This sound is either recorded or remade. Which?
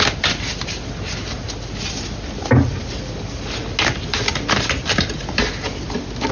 recorded